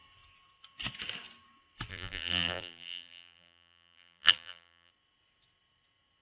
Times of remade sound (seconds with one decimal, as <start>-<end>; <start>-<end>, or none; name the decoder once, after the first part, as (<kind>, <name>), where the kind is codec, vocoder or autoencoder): 1.9-4.9 (vocoder, BigVGAN v2)